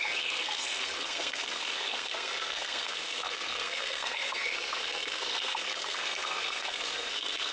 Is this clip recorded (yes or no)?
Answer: no